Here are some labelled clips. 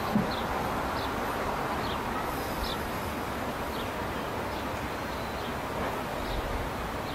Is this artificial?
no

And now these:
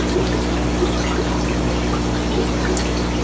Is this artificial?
no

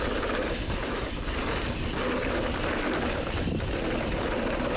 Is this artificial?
no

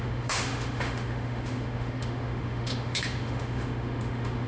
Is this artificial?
yes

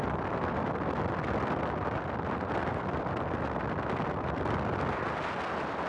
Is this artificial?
no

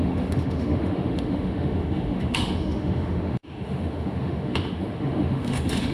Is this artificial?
yes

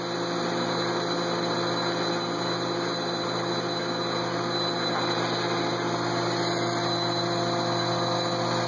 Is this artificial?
no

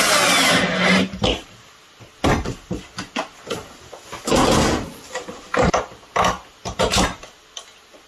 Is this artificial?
no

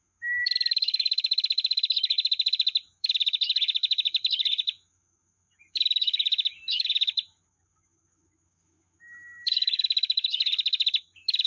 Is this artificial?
yes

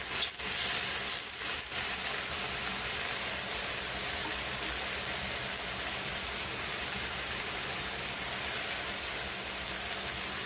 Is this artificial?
no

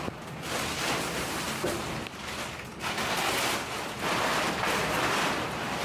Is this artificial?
no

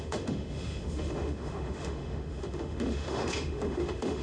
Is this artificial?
yes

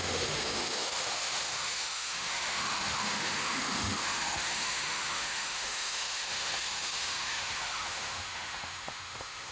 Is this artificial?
yes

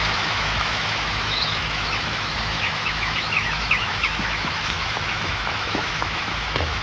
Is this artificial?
yes